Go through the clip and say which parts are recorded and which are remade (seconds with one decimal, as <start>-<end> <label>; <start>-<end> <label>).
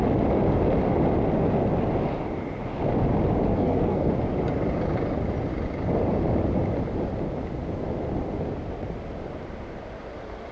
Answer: 0.0-3.5 recorded; 3.5-4.1 remade; 4.1-10.5 recorded